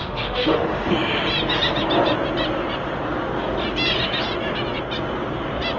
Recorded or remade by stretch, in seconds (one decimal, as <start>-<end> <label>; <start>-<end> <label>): 0.0-0.9 remade; 0.9-5.8 recorded